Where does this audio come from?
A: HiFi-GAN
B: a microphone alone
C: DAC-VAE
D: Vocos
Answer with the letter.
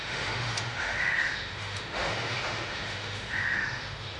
C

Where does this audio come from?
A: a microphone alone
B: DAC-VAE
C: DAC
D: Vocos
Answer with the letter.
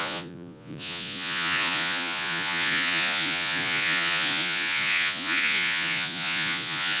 D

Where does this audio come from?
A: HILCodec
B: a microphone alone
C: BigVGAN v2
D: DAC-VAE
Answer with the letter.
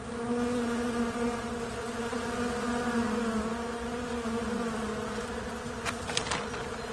B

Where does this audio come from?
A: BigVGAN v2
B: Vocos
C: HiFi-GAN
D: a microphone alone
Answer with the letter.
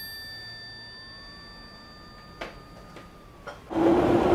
D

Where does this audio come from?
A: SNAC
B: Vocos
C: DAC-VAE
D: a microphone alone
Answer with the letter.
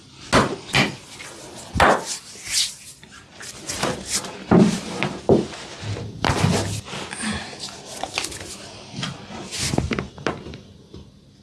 D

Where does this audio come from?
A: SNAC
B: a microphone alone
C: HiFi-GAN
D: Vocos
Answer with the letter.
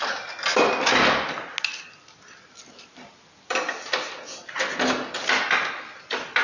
B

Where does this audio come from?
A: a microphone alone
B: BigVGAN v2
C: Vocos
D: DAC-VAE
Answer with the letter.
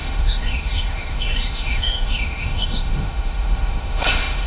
D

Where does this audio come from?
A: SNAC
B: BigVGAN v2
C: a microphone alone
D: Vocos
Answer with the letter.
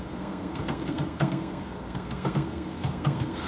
A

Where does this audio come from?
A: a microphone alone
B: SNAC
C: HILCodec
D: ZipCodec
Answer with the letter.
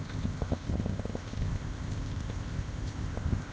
D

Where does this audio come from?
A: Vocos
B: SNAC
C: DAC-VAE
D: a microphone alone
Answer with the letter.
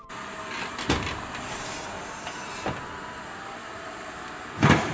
D